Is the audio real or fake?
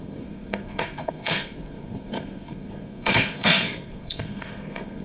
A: fake